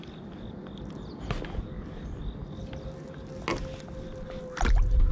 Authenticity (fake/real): real